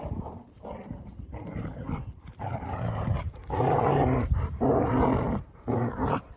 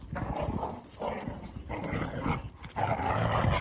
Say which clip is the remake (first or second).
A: first